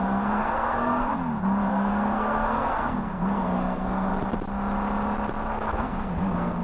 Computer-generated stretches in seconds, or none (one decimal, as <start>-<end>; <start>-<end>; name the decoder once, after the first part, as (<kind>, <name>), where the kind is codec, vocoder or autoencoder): 0.0-1.1 (codec, SNAC); 1.7-4.1; 5.5-6.6